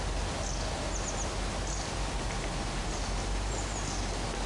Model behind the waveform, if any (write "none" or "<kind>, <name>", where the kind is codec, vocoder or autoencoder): none